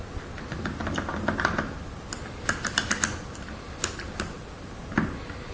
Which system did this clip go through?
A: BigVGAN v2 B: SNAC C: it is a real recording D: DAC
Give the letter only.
C